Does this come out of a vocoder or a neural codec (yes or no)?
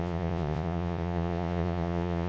yes